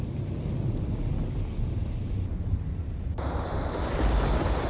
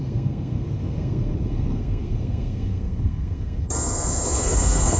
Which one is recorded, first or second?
first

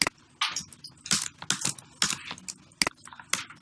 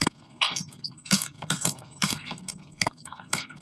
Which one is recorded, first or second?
first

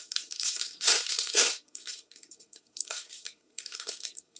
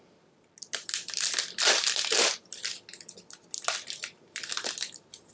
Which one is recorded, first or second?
second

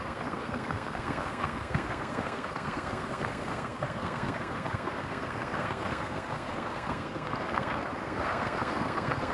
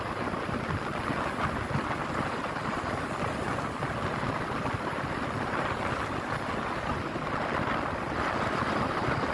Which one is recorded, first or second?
second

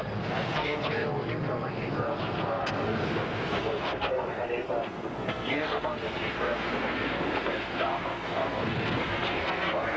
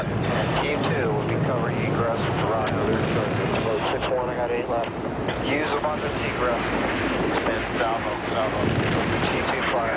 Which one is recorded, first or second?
second